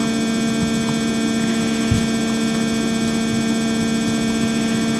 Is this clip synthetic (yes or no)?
no